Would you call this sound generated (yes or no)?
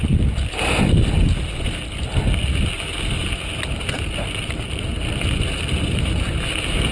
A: no